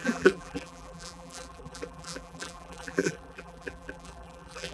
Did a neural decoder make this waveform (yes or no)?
yes